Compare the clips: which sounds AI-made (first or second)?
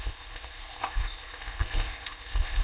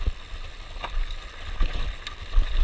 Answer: first